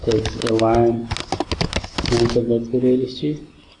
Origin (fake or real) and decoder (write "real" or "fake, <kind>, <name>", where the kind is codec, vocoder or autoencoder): real